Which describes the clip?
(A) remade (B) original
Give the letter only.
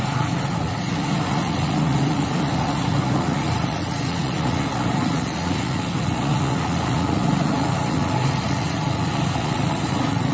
A